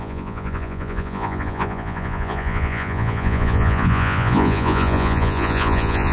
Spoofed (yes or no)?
yes